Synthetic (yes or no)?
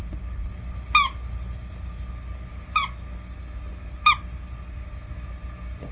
no